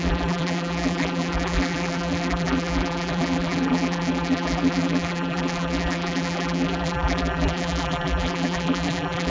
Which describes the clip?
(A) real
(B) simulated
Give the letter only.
B